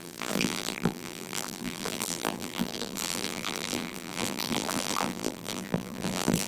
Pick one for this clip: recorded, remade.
remade